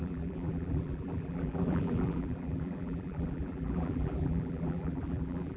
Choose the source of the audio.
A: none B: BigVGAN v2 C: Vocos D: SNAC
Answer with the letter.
B